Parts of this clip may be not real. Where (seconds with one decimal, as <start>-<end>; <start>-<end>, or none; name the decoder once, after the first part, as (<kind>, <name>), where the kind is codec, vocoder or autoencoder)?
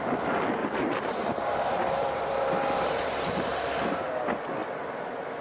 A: 0.6-3.8 (vocoder, BigVGAN v2)